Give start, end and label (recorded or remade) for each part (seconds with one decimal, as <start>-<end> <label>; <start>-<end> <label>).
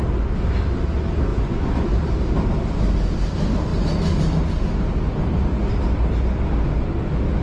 0.0-1.3 recorded; 1.3-2.0 remade; 2.0-7.4 recorded